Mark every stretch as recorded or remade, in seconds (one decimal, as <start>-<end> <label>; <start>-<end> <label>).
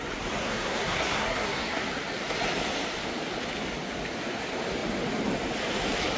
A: 0.0-0.4 recorded; 0.4-1.8 remade; 1.8-6.2 recorded